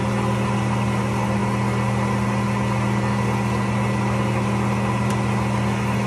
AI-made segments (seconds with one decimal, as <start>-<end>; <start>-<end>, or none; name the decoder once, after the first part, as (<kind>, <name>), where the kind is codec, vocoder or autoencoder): none